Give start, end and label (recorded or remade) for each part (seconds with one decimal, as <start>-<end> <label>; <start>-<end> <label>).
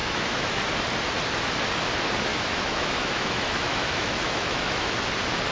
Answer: 0.0-0.6 remade; 0.6-2.3 recorded; 2.3-4.9 remade; 4.9-5.5 recorded